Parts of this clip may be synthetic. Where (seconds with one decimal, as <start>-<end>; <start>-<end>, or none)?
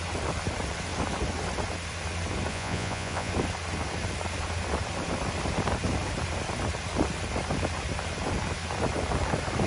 2.5-3.3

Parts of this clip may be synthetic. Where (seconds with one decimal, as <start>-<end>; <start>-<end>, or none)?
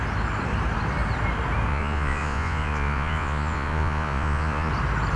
1.7-4.7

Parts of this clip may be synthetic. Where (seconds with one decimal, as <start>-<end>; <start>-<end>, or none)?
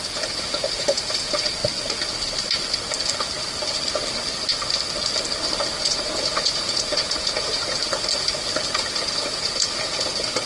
0.0-1.6; 5.8-7.8; 8.7-10.5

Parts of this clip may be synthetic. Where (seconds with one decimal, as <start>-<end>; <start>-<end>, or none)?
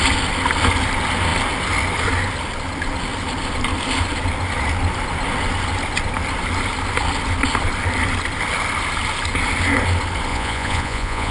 10.3-11.3